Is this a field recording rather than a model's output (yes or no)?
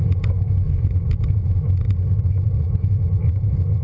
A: no